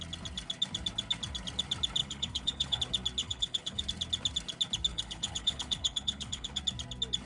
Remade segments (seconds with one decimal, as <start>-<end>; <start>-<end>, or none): 2.0-2.8; 3.2-3.8; 4.9-6.6